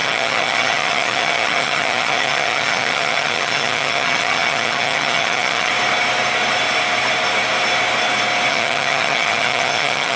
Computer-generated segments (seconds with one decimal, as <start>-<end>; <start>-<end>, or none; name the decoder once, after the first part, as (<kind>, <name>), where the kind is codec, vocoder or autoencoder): 0.0-5.7 (vocoder, HiFi-GAN); 8.5-10.2